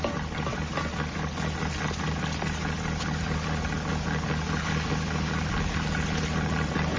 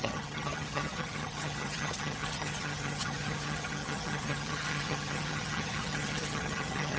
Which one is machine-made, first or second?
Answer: second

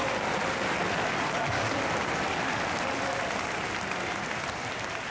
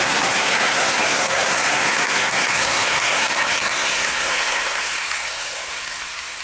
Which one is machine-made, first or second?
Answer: second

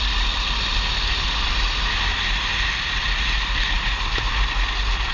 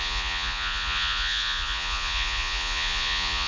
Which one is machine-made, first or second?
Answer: second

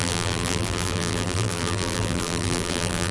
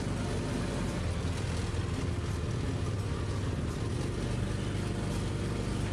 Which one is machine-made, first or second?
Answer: first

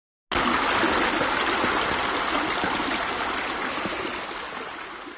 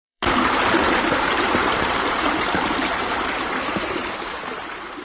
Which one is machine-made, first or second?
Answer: second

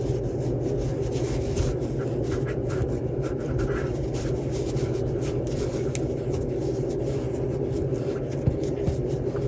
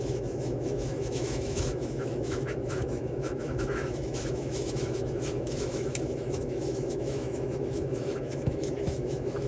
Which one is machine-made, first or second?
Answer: second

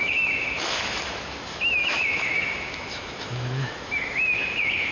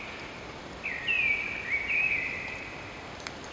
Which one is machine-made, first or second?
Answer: first